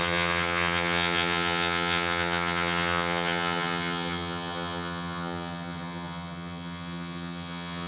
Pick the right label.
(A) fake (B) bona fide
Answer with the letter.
A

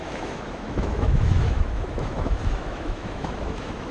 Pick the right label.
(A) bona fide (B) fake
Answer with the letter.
B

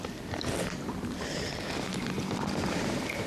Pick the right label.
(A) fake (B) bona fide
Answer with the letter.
B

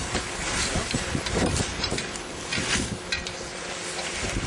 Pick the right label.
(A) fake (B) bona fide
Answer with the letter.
A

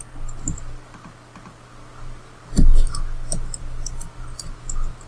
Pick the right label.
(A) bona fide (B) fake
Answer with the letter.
A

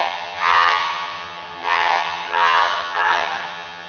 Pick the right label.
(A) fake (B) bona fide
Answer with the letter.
A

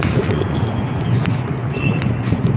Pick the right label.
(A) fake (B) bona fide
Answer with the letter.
A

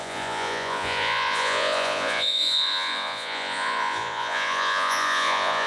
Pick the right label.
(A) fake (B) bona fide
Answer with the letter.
A